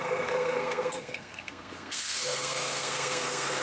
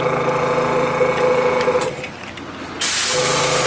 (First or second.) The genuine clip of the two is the second